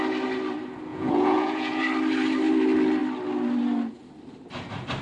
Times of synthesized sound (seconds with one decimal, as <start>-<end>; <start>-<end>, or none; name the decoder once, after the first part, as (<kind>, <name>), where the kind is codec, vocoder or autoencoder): 0.9-1.8 (vocoder, Vocos)